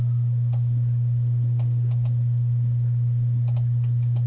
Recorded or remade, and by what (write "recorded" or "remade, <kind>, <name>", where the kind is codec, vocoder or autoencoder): recorded